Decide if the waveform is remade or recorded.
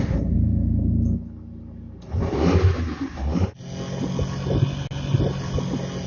recorded